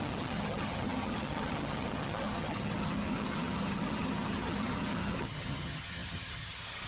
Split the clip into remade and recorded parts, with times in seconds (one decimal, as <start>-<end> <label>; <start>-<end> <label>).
0.0-6.9 remade